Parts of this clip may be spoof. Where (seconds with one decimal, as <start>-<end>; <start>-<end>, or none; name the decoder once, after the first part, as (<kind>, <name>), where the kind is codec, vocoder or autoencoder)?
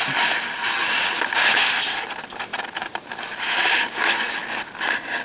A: 2.5-4.2 (vocoder, BigVGAN v2)